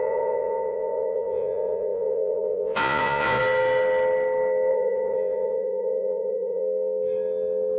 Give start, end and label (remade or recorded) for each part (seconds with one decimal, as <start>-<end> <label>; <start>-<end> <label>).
0.0-3.4 remade; 3.4-4.7 recorded; 4.7-6.6 remade; 6.6-7.8 recorded